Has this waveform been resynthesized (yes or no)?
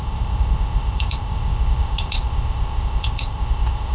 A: yes